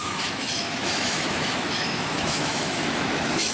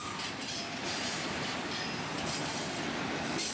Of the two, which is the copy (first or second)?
first